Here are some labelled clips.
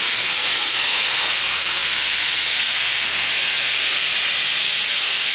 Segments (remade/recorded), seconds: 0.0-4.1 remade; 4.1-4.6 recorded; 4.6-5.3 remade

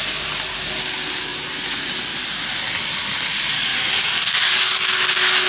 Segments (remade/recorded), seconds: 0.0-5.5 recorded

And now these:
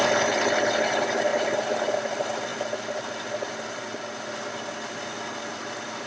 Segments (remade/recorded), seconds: 0.0-6.1 recorded

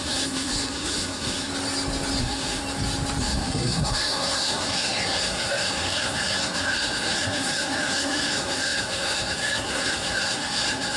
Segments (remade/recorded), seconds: 0.0-1.5 remade; 1.5-2.2 recorded; 2.2-2.6 remade; 2.6-3.2 recorded; 3.2-11.0 remade

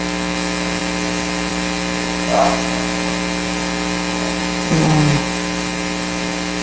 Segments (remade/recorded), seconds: 0.0-6.6 recorded

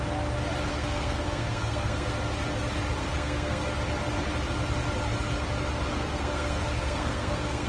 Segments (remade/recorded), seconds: 0.0-0.7 recorded; 0.7-2.1 remade; 2.1-3.0 recorded; 3.0-3.6 remade; 3.6-5.9 recorded; 5.9-7.7 remade

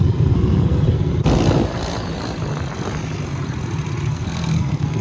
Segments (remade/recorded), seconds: 0.0-1.1 remade; 1.1-4.1 recorded; 4.1-5.0 remade